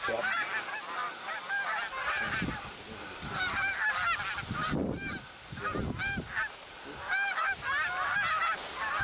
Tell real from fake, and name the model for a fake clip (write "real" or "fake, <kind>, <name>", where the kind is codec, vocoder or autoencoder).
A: real